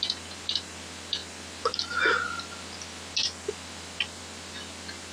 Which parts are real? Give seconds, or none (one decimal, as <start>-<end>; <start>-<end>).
0.0-5.1